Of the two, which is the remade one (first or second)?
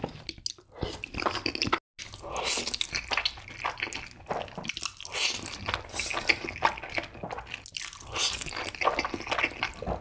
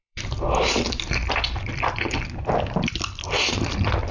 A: second